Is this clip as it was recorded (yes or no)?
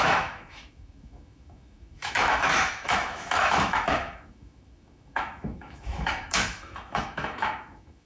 no